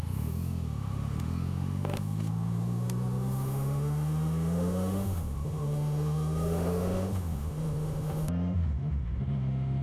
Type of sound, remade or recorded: remade